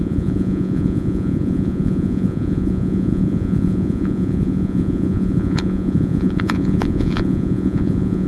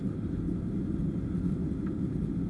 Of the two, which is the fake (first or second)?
first